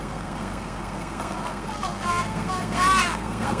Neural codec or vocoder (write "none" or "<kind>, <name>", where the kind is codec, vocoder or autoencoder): codec, SNAC